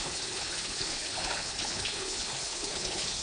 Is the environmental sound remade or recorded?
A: remade